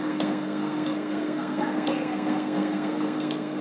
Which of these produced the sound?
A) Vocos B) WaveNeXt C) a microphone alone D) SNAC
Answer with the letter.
D